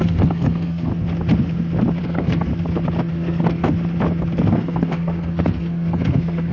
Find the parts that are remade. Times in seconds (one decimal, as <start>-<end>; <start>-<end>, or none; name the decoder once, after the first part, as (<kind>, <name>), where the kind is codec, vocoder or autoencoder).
0.0-0.9 (codec, SNAC); 2.0-2.5; 3.1-3.7; 4.5-6.5